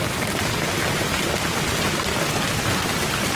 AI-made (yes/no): no